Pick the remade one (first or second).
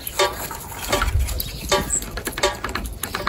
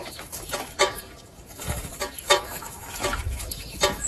second